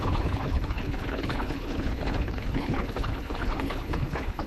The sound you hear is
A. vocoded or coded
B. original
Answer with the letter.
A